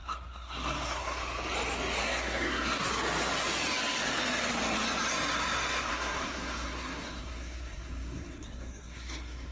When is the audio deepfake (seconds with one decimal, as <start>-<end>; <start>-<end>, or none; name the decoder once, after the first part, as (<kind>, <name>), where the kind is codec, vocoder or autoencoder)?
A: 0.0-1.2 (codec, SNAC); 2.0-2.9; 5.9-9.5